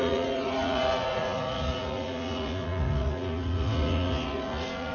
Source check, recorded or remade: remade